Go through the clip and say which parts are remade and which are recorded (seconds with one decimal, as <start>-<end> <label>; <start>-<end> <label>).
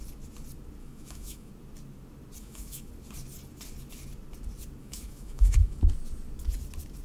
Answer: 0.0-0.8 recorded; 0.8-1.5 remade; 1.5-2.4 recorded; 2.4-2.9 remade; 2.9-4.8 recorded; 4.8-5.8 remade; 5.8-7.0 recorded